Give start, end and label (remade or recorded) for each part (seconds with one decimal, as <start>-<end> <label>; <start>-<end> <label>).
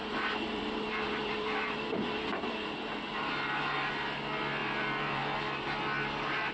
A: 0.0-3.9 remade; 3.9-4.6 recorded; 4.6-5.4 remade; 5.4-6.5 recorded